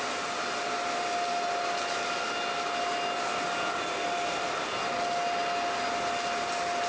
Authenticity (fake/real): real